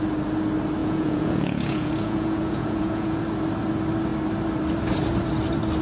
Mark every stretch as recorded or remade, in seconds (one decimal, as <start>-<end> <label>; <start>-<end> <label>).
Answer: 0.0-0.8 recorded; 0.8-3.2 remade; 3.2-5.8 recorded